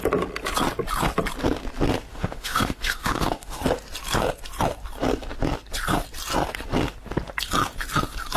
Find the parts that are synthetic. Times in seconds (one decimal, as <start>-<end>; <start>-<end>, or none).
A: 2.1-3.6